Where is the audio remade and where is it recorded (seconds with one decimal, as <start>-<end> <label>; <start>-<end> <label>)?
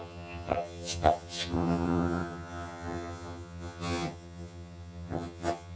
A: 0.0-5.8 remade